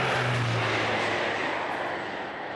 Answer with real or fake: real